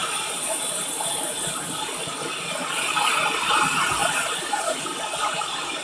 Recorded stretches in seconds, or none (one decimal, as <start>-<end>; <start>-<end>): 0.0-4.0; 5.0-5.8